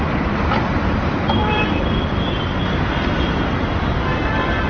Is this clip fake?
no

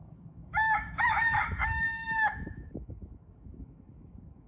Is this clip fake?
yes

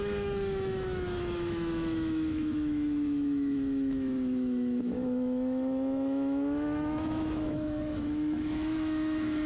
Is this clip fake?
yes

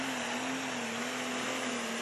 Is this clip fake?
no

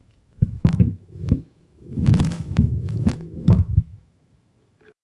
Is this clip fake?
yes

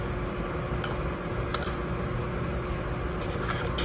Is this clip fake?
no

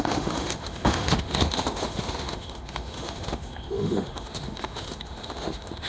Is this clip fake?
yes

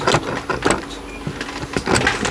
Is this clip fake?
no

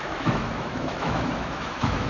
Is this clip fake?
yes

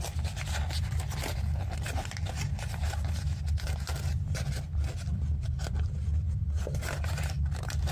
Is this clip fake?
no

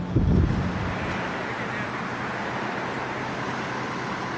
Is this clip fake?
no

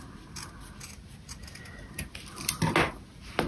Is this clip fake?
no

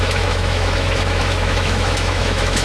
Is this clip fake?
yes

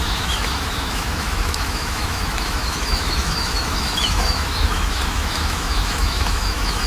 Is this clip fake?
yes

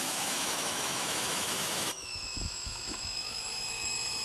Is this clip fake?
yes